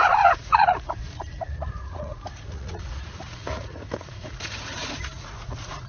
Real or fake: fake